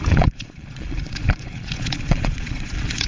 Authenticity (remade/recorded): remade